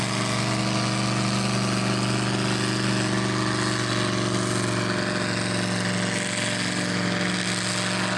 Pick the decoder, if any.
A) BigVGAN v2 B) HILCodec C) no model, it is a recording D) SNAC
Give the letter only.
C